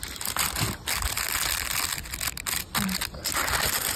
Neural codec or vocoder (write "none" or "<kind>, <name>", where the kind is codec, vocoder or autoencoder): none